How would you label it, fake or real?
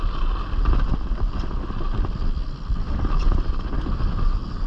real